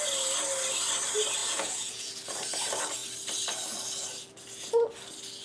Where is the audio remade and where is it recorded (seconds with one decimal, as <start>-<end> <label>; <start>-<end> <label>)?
0.0-1.4 recorded; 1.4-2.1 remade; 2.1-5.4 recorded